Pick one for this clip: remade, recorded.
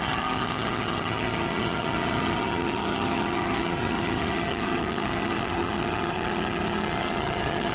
remade